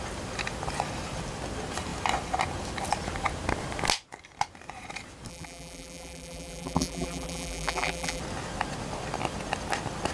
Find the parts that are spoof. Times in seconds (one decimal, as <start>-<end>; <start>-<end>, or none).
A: 5.3-8.2